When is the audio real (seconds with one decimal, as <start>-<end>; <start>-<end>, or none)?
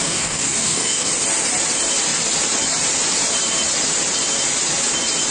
1.1-5.3